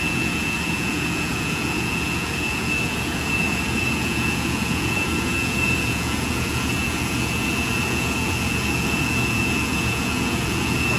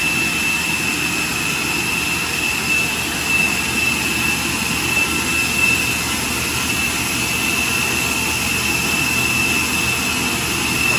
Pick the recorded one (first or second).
second